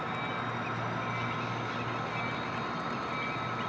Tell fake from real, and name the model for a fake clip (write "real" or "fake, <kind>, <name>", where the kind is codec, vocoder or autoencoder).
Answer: real